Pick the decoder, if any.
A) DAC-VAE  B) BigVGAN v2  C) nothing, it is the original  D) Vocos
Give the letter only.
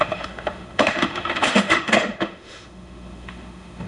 A